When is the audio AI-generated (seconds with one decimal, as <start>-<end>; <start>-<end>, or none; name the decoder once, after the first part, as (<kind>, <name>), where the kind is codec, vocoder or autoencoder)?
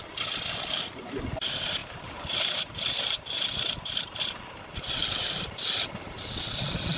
1.8-4.2 (vocoder, BigVGAN v2); 5.0-6.3